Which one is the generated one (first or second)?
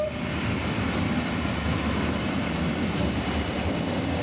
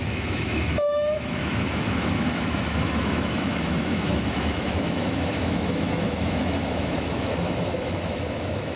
second